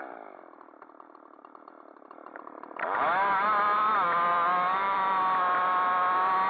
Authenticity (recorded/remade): remade